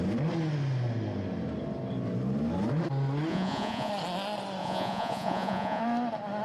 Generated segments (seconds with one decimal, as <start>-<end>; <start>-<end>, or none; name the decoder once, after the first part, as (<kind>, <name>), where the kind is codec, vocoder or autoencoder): 3.3-3.9 (vocoder, Vocos); 4.6-5.8